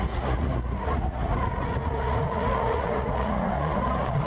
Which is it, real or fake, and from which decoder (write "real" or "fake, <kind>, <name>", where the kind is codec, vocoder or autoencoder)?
fake, vocoder, Vocos